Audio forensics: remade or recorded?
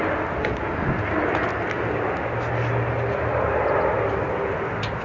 recorded